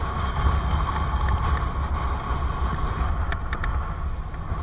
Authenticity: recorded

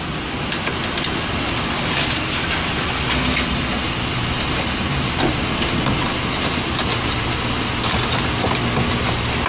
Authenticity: recorded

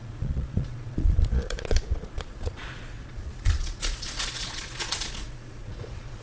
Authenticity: remade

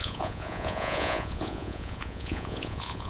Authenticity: remade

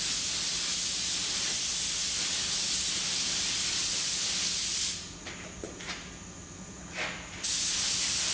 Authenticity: recorded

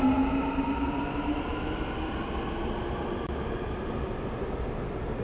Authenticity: recorded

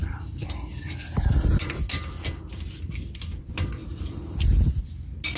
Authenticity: recorded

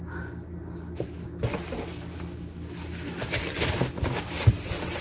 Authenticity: recorded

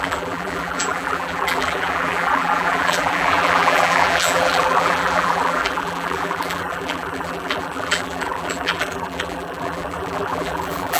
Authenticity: remade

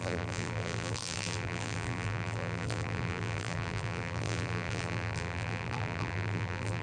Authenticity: remade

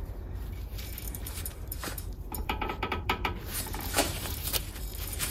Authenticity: remade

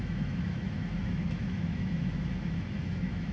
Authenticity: remade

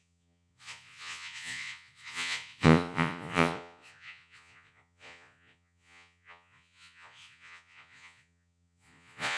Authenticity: remade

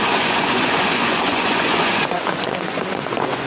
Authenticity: remade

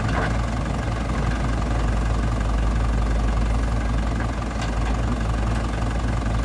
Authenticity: recorded